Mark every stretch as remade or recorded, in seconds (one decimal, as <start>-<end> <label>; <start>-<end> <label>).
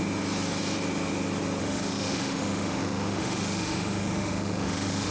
0.0-1.6 recorded; 1.6-5.1 remade